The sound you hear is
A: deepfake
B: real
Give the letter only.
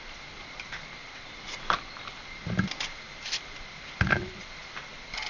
A